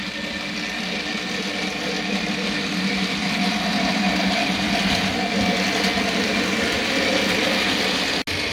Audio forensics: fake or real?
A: real